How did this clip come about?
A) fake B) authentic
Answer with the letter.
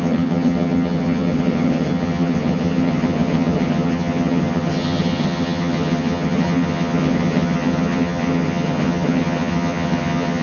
A